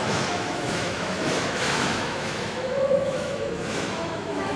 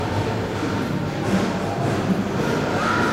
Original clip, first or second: second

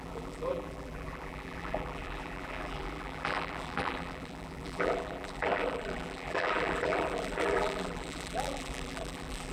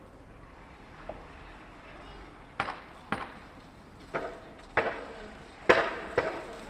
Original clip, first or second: second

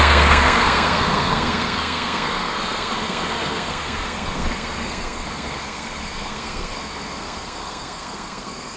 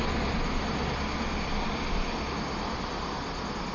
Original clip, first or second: second